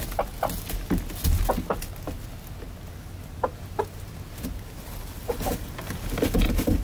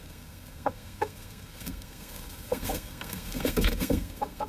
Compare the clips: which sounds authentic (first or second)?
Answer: first